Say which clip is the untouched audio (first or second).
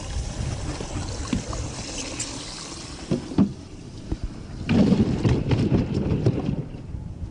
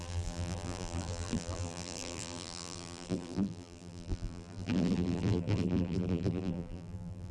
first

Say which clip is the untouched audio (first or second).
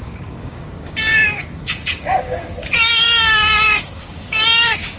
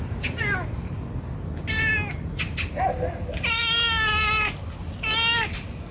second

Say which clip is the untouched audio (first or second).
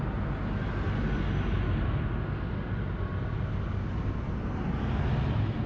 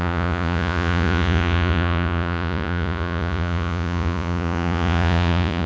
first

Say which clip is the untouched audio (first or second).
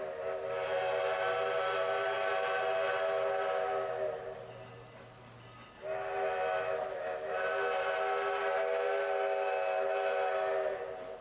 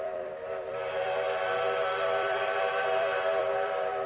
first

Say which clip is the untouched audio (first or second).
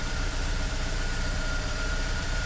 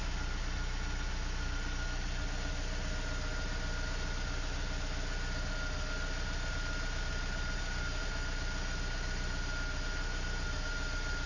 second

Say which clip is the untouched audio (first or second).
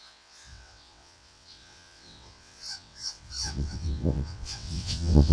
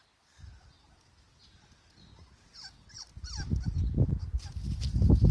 second